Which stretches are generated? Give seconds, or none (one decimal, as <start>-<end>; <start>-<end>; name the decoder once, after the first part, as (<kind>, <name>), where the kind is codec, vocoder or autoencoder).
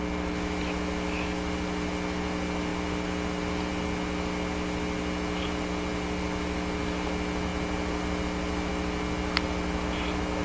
none